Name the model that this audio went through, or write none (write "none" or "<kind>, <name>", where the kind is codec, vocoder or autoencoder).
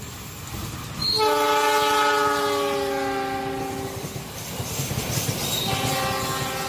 none